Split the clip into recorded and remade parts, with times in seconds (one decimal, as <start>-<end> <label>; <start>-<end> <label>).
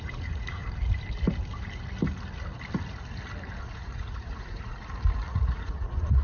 0.0-0.6 remade; 0.6-3.6 recorded; 3.6-4.8 remade; 4.8-5.3 recorded; 5.3-6.2 remade